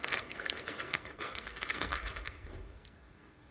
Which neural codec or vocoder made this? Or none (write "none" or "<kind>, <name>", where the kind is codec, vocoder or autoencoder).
codec, SNAC